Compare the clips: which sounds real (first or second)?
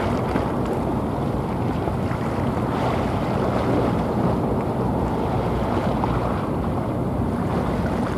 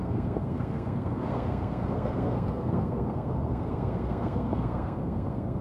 first